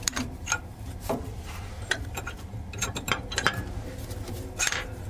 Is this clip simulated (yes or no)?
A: yes